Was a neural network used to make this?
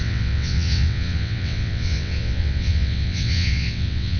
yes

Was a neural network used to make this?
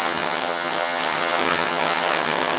yes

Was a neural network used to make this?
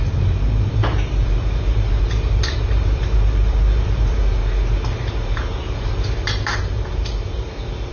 yes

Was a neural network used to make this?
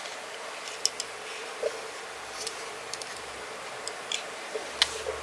no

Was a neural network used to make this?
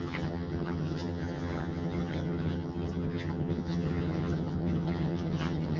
yes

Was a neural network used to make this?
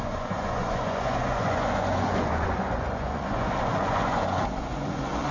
yes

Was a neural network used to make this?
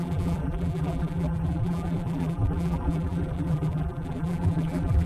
yes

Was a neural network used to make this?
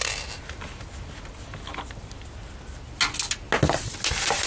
no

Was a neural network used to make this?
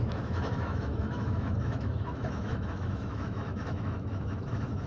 yes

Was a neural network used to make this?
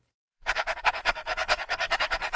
yes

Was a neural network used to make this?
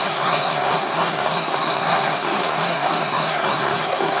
yes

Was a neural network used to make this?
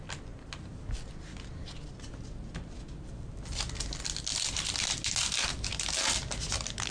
no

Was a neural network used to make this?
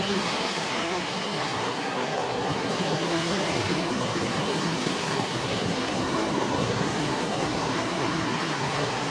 yes